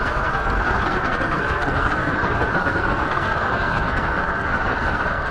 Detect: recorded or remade remade